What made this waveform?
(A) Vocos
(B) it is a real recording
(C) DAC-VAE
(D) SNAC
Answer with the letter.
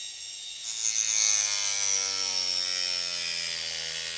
B